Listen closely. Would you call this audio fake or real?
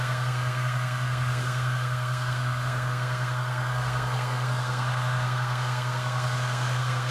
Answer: fake